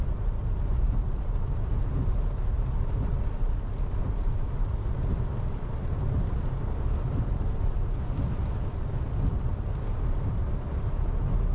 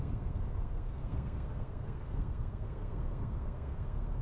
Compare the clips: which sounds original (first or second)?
first